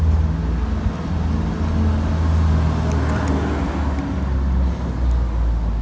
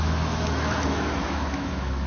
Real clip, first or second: first